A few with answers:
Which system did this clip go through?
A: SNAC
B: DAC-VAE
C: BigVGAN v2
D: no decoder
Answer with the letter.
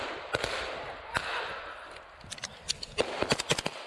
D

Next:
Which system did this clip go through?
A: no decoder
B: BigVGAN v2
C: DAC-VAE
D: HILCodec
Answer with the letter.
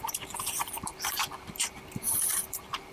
B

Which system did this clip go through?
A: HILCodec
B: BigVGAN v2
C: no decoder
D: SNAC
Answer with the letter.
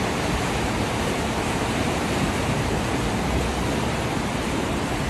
B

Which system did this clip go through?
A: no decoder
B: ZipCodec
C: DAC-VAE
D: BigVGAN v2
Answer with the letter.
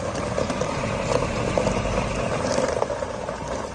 D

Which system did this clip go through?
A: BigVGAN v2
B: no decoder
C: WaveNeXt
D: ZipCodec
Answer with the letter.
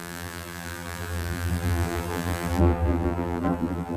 A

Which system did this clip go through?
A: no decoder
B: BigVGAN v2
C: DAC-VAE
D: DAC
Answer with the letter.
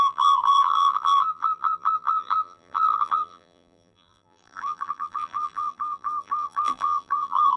B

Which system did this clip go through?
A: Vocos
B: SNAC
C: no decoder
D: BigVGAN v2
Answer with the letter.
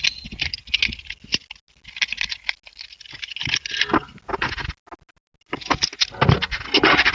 C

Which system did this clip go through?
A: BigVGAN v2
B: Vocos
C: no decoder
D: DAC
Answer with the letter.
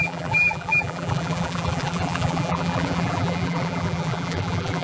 A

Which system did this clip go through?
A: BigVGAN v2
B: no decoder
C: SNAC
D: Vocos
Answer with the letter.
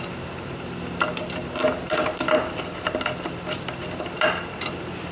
A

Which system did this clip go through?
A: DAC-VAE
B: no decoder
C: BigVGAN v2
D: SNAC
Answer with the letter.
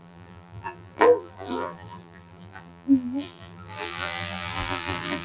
C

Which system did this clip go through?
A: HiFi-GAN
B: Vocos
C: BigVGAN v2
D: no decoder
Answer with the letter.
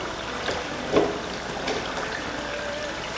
C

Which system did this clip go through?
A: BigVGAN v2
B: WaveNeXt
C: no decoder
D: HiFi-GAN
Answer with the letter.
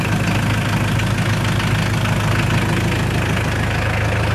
C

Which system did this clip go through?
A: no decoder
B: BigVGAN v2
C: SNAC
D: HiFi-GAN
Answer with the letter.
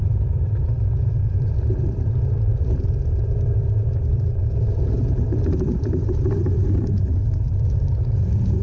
B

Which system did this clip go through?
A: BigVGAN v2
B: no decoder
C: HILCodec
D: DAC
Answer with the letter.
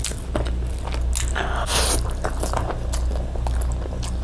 B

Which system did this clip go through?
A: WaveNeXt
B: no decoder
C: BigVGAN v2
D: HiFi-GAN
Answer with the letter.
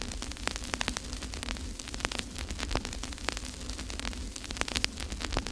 C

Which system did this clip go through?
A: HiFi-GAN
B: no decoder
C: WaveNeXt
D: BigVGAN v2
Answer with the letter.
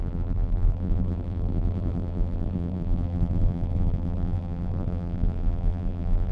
D